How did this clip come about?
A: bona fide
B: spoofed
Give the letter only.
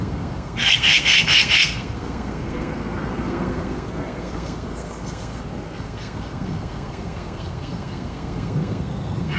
B